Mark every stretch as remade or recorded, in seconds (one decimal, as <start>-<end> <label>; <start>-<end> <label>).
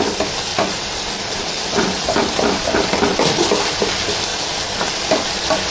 0.0-0.5 recorded; 0.5-3.9 remade; 3.9-5.7 recorded